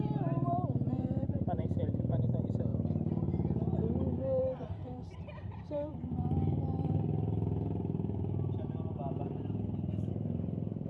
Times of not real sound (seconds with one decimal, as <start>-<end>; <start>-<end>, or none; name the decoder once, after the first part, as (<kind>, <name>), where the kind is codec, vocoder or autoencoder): 0.0-2.7 (vocoder, BigVGAN v2); 4.4-5.9; 10.1-10.9